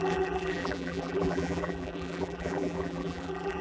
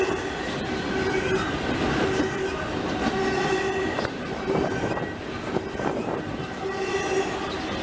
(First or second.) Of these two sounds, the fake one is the first